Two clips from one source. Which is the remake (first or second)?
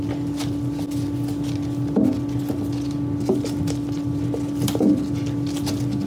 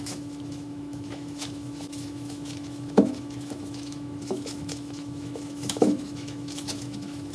second